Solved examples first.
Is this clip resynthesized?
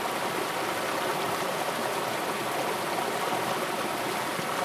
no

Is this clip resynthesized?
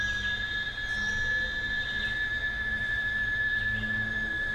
no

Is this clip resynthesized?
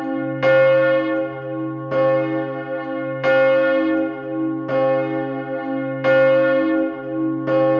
no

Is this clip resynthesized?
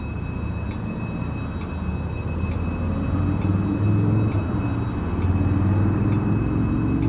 no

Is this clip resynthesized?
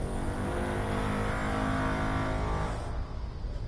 no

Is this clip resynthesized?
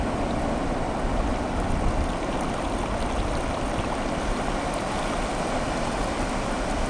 no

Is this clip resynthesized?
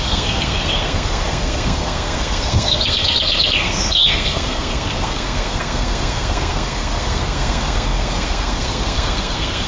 yes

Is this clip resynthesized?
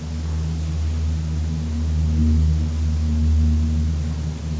no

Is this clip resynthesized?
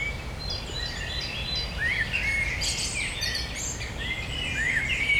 no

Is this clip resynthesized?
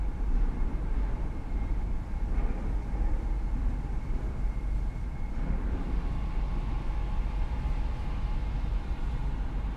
yes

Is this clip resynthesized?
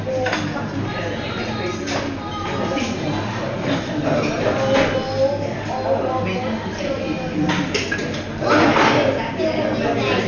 no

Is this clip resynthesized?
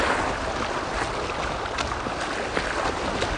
no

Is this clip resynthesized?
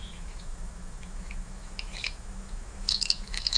yes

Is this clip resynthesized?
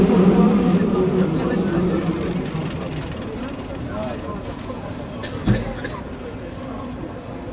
no